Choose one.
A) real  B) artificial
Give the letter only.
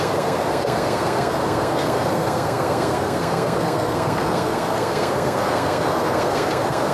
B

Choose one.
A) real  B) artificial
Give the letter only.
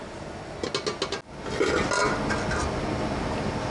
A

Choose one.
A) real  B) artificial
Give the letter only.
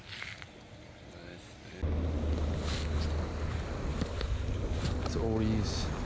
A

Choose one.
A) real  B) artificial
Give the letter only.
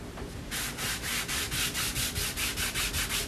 A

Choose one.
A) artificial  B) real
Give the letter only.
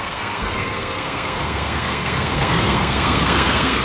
A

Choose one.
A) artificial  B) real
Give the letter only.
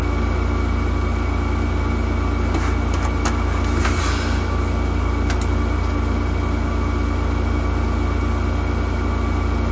B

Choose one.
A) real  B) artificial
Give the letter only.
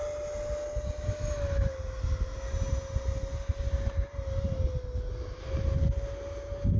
A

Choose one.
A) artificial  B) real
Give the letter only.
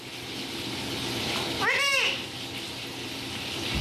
B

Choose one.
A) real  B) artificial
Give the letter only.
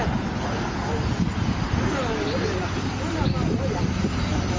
A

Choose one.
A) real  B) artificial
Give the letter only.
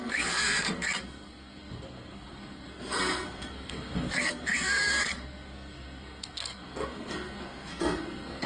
B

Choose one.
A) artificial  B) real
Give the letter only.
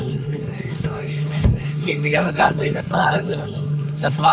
A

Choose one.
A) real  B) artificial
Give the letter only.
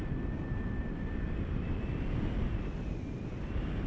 A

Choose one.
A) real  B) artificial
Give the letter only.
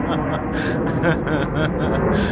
A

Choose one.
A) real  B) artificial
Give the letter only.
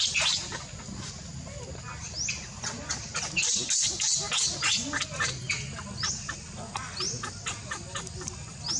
A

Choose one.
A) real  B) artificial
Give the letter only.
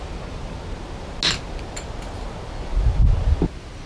A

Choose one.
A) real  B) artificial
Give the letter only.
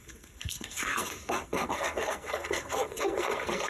B